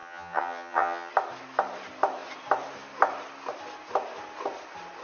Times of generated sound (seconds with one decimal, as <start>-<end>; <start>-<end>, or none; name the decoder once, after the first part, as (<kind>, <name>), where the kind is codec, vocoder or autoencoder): 0.0-1.1 (vocoder, HiFi-GAN)